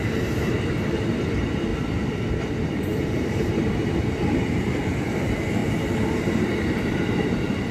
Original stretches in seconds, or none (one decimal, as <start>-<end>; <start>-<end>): 1.7-2.3; 5.6-6.1; 6.5-7.2